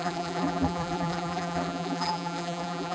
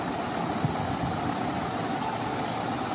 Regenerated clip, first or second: first